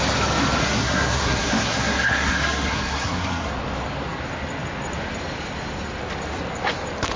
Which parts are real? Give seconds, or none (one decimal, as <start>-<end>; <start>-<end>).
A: 0.0-0.6; 3.5-7.2